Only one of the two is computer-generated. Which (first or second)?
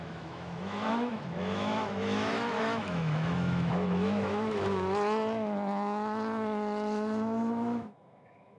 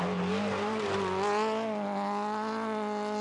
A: first